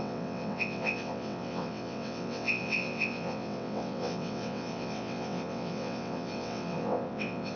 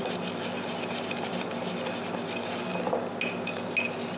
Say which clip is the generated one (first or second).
first